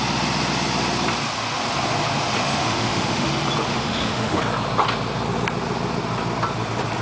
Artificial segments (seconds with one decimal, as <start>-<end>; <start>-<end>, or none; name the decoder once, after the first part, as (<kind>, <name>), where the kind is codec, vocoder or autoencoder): 2.4-3.3 (autoencoder, DAC-VAE); 3.7-4.4

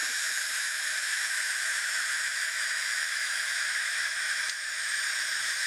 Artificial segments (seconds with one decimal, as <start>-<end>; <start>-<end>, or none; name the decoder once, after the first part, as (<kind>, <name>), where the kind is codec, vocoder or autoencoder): 0.0-5.7 (autoencoder, DAC-VAE)

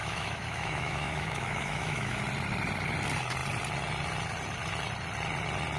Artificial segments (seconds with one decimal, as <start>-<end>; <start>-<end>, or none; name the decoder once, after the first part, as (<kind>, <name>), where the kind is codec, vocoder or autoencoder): 0.0-2.2 (autoencoder, DAC-VAE)

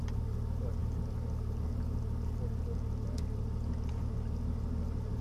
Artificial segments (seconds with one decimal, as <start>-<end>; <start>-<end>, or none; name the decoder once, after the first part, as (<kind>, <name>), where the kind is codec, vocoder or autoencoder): none

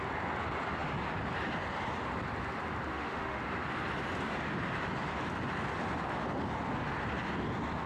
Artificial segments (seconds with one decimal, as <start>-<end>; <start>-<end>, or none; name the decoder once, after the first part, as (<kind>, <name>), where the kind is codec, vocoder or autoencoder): 2.9-3.4 (autoencoder, DAC-VAE)

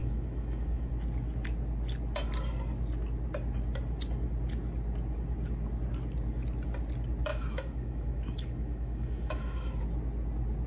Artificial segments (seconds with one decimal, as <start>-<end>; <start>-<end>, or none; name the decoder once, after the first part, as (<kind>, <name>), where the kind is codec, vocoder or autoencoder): 0.0-0.9 (autoencoder, DAC-VAE); 7.3-9.8

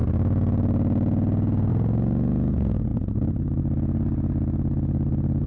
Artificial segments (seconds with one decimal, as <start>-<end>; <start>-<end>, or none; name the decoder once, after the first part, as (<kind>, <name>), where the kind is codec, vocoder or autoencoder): none

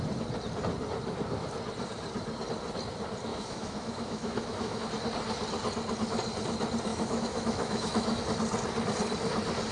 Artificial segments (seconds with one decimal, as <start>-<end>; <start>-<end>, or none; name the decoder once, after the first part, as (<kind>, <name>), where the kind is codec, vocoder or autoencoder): 3.3-4.9 (autoencoder, DAC-VAE); 6.9-8.2